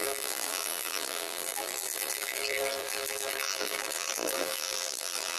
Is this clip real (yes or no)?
no